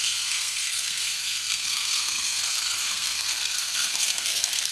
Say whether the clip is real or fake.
fake